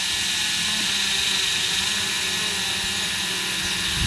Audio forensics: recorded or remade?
recorded